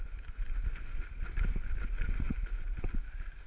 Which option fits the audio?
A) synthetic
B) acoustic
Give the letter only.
B